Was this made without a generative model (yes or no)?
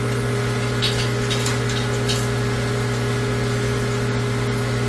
yes